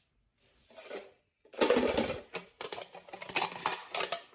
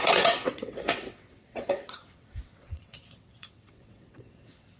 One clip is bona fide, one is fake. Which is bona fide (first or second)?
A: first